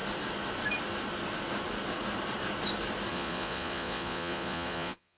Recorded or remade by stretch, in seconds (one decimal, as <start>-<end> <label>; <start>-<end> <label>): 0.0-3.1 recorded; 3.1-5.2 remade